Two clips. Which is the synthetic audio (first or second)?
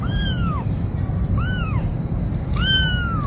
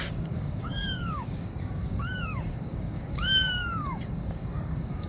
second